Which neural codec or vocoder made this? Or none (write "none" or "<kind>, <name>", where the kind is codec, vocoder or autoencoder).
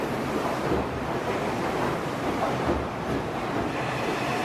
vocoder, BigVGAN v2